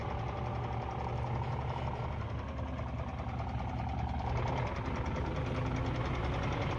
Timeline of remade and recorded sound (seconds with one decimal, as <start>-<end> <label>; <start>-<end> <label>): 0.0-6.8 recorded